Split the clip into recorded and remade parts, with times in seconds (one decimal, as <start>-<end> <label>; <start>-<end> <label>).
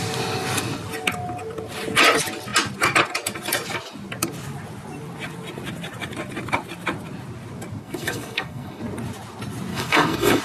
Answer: 0.0-7.8 recorded; 7.8-8.8 remade; 8.8-9.7 recorded; 9.7-10.4 remade